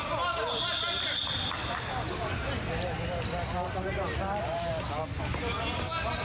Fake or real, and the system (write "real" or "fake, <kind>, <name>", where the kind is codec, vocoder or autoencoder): real